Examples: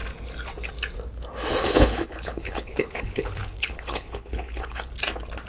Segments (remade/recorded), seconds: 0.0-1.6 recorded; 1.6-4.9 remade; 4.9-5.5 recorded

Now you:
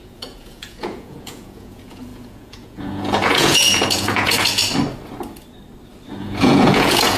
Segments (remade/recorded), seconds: 0.0-4.6 remade; 4.6-6.2 recorded; 6.2-7.2 remade

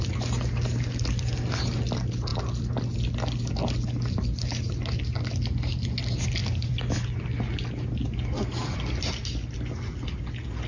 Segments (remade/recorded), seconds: 0.0-10.7 recorded

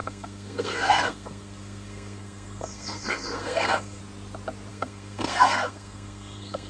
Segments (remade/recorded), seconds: 0.0-4.0 remade; 4.0-4.7 recorded; 4.7-6.7 remade

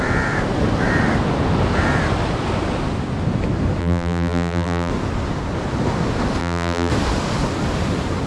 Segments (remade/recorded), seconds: 0.0-3.8 recorded; 3.8-4.9 remade; 4.9-6.4 recorded; 6.4-6.9 remade; 6.9-8.3 recorded

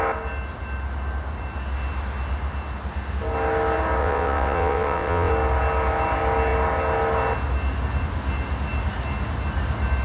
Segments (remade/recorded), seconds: 0.0-4.0 recorded; 4.0-5.3 remade; 5.3-10.0 recorded

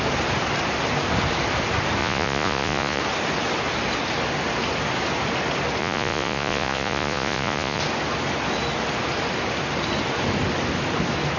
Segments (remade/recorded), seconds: 0.0-2.0 recorded; 2.0-3.0 remade; 3.0-5.8 recorded; 5.8-7.8 remade; 7.8-11.4 recorded